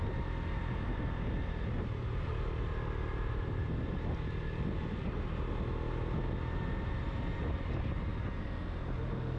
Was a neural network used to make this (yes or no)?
no